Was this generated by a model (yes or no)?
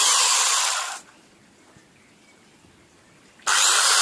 no